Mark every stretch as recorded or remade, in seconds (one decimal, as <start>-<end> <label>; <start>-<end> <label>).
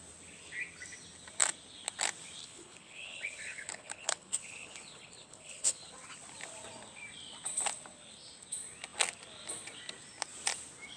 0.0-2.4 recorded; 2.4-5.9 remade; 5.9-11.0 recorded